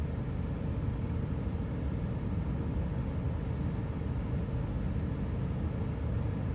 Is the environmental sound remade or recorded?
recorded